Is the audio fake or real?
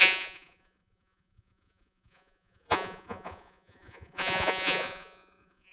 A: fake